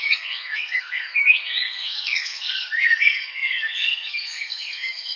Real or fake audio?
fake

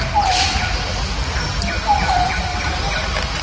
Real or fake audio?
real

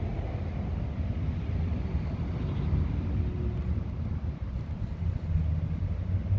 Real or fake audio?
real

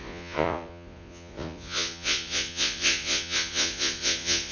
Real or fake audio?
fake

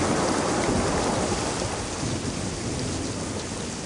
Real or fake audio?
real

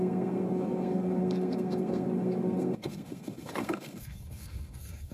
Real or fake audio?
fake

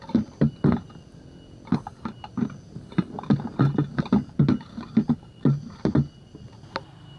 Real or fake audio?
real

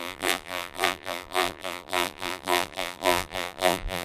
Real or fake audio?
fake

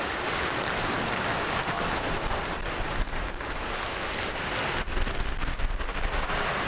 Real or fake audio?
real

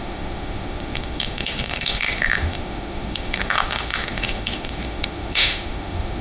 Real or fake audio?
fake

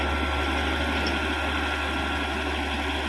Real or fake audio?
real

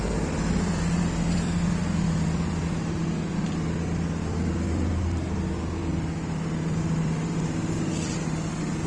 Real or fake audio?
real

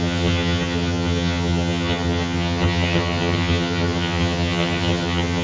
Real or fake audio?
fake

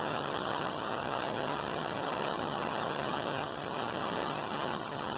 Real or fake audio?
fake